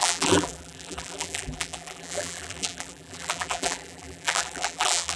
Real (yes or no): no